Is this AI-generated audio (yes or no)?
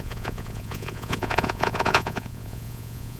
yes